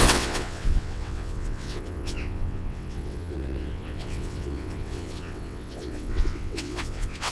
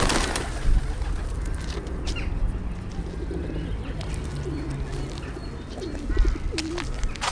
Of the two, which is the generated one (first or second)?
first